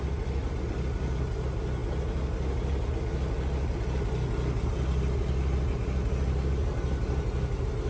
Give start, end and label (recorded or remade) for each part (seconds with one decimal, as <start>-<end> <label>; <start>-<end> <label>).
0.0-7.9 recorded